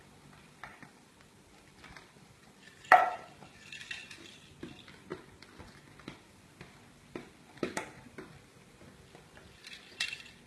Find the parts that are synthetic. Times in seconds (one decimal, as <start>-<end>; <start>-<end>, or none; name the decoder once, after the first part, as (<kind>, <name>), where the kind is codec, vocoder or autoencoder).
0.0-10.5 (vocoder, BigVGAN v2)